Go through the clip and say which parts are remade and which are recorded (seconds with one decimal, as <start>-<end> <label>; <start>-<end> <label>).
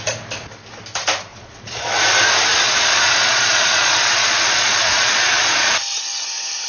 0.0-1.3 recorded; 1.3-2.0 remade; 2.0-2.5 recorded; 2.5-5.7 remade; 5.7-6.7 recorded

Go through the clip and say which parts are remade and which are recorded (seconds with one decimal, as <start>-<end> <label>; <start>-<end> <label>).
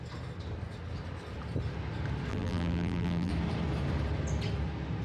0.0-2.3 recorded; 2.3-3.3 remade; 3.3-5.0 recorded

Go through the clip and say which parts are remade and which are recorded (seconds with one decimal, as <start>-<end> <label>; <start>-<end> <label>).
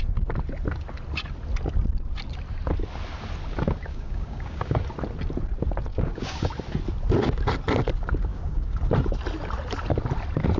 0.0-3.9 recorded; 3.9-4.8 remade; 4.8-5.9 recorded; 5.9-6.5 remade; 6.5-8.3 recorded; 8.3-8.8 remade; 8.8-10.6 recorded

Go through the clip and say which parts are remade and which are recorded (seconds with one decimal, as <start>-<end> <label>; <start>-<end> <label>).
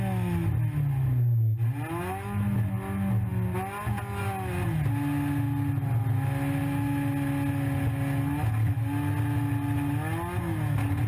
0.0-11.1 recorded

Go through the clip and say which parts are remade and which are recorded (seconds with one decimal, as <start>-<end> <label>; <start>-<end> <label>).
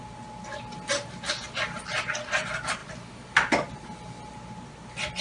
0.0-5.2 recorded